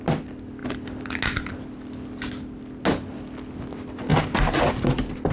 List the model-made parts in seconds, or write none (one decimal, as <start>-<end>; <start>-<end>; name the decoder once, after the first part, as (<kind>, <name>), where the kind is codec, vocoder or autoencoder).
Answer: none